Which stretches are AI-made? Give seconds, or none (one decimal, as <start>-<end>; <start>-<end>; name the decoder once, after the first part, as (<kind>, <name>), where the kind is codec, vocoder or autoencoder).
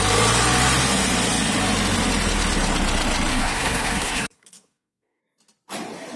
3.3-5.2 (codec, SNAC)